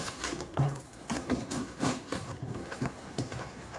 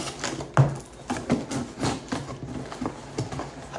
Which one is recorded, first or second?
second